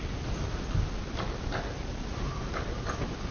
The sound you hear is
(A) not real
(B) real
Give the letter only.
B